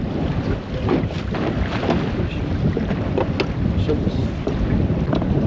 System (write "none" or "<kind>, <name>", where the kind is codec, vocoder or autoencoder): none